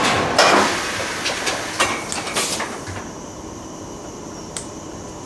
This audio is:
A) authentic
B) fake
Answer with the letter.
A